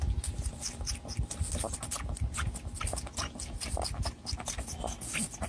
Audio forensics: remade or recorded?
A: recorded